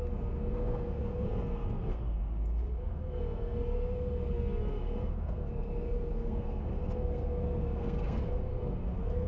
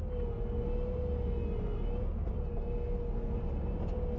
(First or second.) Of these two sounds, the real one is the second